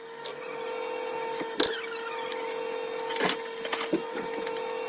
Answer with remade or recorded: recorded